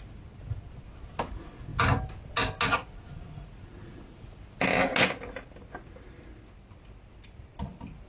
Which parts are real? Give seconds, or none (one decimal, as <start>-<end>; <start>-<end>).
0.0-2.7; 4.4-8.1